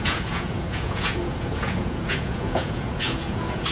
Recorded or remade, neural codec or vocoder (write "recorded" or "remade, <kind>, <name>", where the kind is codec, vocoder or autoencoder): remade, vocoder, Vocos